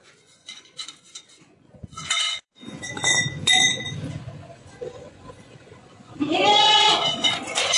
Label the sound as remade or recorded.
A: remade